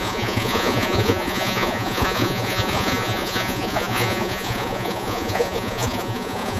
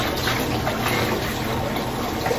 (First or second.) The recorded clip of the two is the second